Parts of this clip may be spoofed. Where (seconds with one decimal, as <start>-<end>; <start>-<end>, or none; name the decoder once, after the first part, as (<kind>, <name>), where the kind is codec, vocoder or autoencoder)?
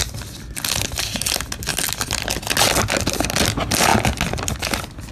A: none